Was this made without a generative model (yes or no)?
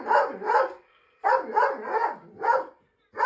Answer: yes